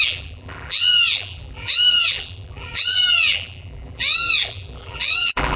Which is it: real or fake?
fake